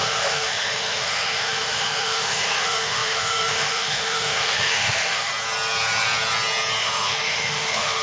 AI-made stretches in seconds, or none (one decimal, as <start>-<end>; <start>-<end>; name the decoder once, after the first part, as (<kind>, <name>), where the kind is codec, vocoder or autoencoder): 0.0-5.3 (autoencoder, DAC-VAE); 6.8-8.0

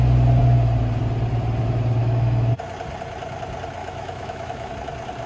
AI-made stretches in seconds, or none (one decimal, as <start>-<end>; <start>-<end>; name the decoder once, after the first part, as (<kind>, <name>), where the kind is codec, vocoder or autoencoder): 2.0-2.5 (autoencoder, DAC-VAE); 3.8-4.7